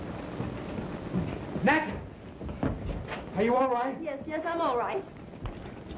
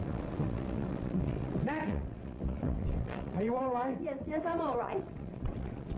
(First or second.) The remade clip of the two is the second